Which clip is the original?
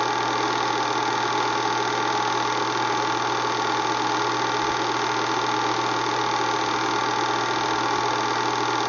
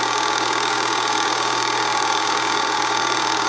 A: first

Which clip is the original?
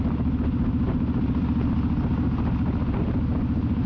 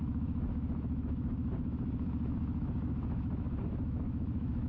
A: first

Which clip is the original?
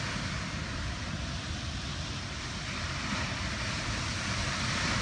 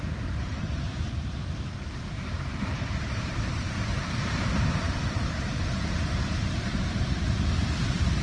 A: first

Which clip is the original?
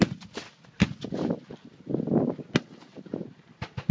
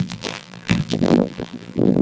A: first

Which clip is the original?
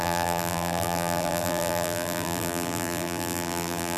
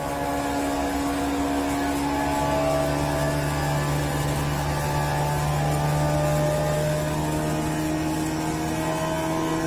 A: second